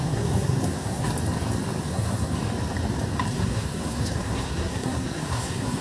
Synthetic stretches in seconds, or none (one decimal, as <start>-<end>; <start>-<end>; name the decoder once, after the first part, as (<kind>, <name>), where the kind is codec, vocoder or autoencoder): 0.0-1.1 (codec, SNAC); 1.8-2.4; 3.3-5.8